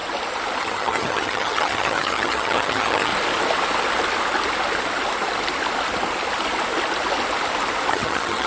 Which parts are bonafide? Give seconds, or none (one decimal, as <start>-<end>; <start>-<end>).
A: 0.0-0.6; 3.1-7.9

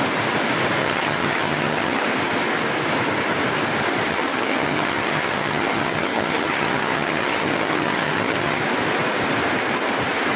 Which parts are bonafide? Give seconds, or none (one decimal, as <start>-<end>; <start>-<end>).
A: 0.0-0.8; 2.0-4.1; 8.6-10.4

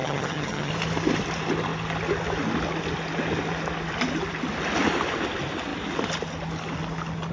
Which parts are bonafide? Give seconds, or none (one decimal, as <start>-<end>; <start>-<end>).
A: 0.7-7.3

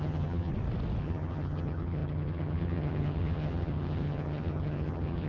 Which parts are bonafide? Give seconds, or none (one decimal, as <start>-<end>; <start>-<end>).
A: 0.5-1.0

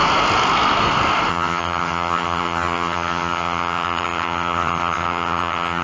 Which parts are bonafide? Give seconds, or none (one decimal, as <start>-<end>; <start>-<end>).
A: 0.0-1.3

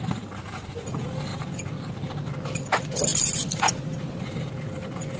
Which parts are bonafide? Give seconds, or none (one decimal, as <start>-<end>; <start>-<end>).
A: 0.0-5.2

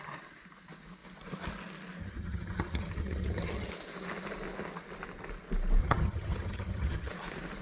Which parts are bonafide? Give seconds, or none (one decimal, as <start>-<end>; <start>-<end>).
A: 0.0-2.0; 3.7-5.8; 7.1-7.6

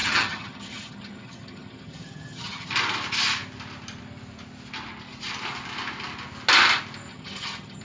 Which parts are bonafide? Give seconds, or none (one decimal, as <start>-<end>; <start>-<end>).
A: 2.7-7.1